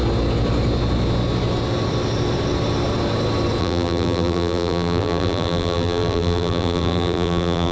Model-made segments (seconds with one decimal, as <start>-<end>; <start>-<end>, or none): 3.6-7.7